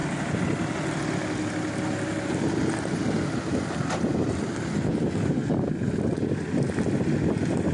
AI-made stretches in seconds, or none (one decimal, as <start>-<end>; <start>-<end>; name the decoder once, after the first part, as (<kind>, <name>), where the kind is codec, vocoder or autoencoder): none

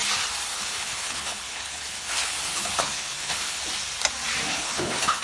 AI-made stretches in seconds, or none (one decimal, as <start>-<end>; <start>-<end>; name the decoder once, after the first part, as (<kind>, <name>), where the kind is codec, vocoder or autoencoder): 0.5-3.6 (codec, HILCodec); 4.5-5.2